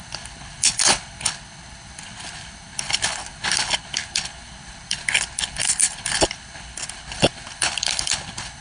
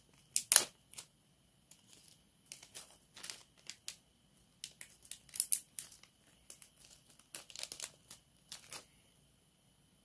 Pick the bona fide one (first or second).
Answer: second